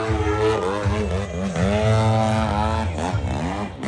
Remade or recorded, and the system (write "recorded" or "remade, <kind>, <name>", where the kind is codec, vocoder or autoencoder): recorded